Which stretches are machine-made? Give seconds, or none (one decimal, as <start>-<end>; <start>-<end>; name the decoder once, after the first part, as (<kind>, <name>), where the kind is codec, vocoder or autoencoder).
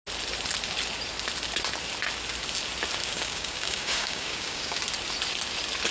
3.0-4.8 (codec, DAC)